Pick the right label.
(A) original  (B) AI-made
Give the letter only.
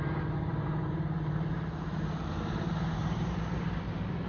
B